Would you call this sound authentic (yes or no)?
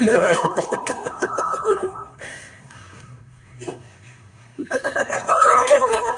no